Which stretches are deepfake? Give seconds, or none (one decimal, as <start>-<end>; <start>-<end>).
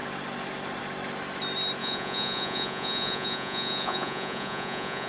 1.8-5.1